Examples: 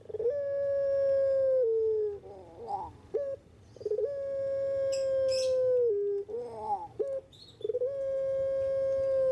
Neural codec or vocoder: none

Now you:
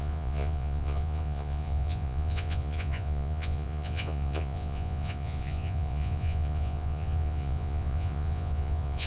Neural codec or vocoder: vocoder, Vocos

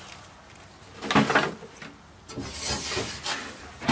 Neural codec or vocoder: none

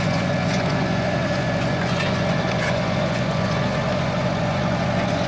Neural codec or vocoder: vocoder, Vocos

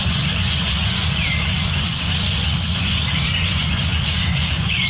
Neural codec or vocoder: vocoder, Vocos